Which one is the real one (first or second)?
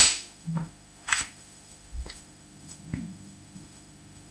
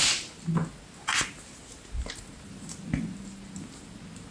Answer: second